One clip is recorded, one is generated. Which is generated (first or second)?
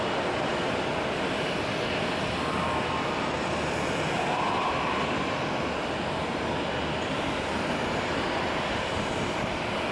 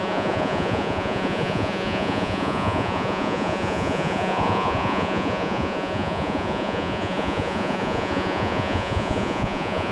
second